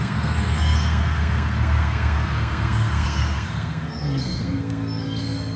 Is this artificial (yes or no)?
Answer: yes